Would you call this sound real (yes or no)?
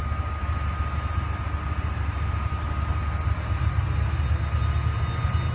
yes